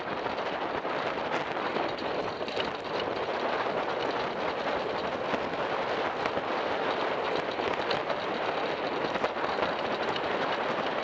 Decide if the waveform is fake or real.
real